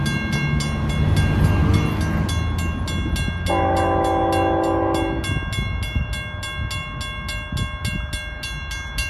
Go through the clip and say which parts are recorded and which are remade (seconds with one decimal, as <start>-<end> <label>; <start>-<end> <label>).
0.0-9.1 recorded

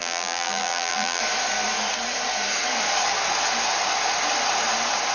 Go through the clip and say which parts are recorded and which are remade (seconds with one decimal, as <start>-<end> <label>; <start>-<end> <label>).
0.0-1.2 remade; 1.2-5.1 recorded

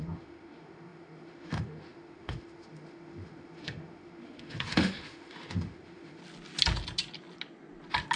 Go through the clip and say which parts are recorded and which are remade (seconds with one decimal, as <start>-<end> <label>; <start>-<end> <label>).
0.0-6.2 remade; 6.2-8.2 recorded

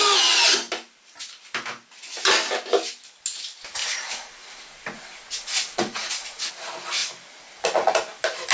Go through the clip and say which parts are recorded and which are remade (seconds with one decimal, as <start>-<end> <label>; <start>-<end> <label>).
0.0-3.8 recorded; 3.8-6.5 remade; 6.5-8.5 recorded

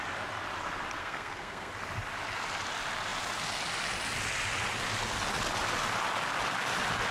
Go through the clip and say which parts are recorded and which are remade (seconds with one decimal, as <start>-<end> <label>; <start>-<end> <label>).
0.0-1.0 recorded; 1.0-1.7 remade; 1.7-7.1 recorded

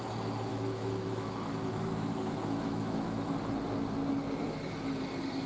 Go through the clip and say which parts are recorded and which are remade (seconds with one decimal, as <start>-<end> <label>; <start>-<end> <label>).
0.0-0.5 recorded; 0.5-3.4 remade; 3.4-4.4 recorded; 4.4-5.0 remade; 5.0-5.5 recorded

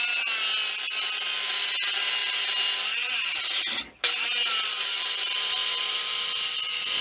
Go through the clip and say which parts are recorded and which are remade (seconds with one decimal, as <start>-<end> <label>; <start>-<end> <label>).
0.0-7.0 recorded